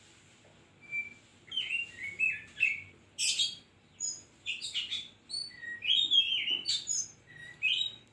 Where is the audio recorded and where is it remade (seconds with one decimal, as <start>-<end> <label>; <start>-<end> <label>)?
0.0-8.1 recorded